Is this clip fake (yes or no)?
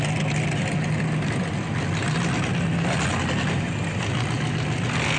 no